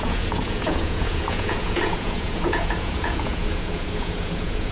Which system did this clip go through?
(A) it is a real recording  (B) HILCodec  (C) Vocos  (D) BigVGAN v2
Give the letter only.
C